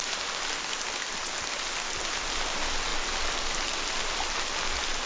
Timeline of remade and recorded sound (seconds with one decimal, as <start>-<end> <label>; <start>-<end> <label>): 0.0-5.1 recorded